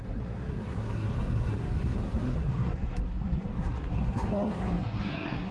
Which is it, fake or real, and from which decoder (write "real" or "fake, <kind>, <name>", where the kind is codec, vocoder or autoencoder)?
fake, codec, SNAC